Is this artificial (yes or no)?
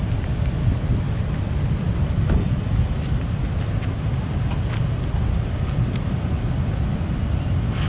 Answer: no